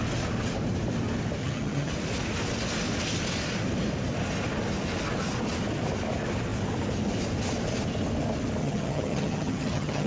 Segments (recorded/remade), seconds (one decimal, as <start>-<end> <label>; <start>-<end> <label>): 0.0-1.4 recorded; 1.4-1.9 remade; 1.9-8.6 recorded; 8.6-10.1 remade